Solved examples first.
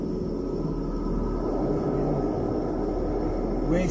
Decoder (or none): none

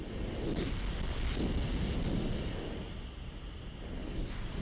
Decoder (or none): none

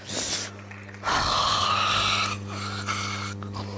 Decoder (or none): none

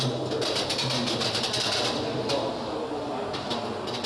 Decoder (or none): none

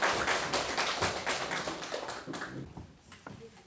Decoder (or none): none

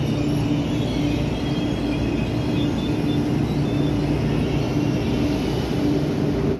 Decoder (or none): none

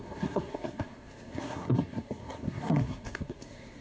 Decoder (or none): codec, SNAC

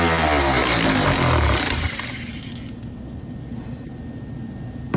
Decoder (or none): none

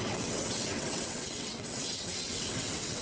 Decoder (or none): vocoder, WaveNeXt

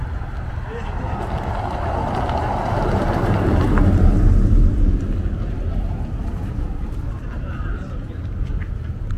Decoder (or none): none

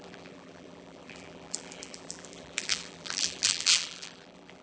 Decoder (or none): vocoder, BigVGAN v2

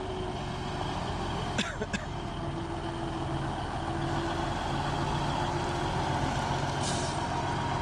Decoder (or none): none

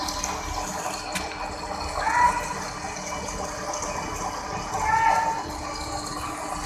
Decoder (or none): none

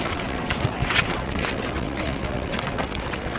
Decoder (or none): vocoder, WaveNeXt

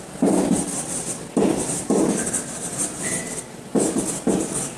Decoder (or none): none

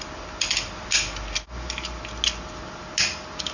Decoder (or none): none